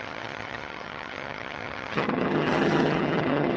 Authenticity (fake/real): fake